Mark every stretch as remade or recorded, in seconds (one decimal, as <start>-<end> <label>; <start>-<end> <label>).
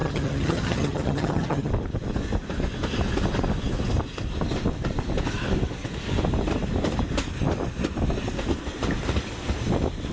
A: 0.0-1.7 remade; 1.7-10.1 recorded